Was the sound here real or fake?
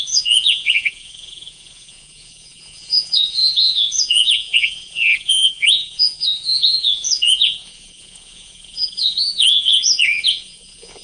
fake